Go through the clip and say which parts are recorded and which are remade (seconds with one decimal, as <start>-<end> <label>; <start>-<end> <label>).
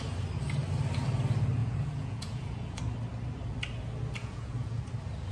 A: 0.0-1.6 recorded; 1.6-2.8 remade; 2.8-4.2 recorded; 4.2-4.8 remade; 4.8-5.3 recorded